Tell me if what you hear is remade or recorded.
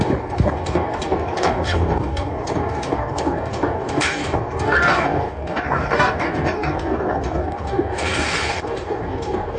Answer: remade